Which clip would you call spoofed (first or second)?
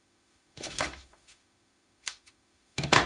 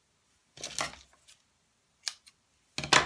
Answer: first